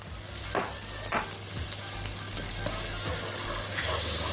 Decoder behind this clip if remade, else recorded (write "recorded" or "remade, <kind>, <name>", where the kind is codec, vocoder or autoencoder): recorded